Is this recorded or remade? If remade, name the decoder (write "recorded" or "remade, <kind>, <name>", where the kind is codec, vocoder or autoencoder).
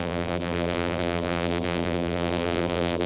remade, vocoder, BigVGAN v2